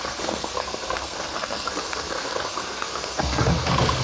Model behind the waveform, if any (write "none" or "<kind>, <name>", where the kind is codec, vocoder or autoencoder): codec, SNAC